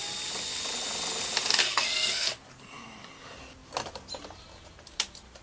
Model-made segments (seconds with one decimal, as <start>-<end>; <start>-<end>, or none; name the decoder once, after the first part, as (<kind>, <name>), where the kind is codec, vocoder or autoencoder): 1.6-2.3 (codec, SNAC)